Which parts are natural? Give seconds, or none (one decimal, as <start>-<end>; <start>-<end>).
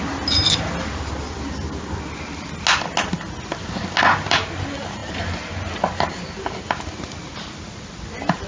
0.0-8.5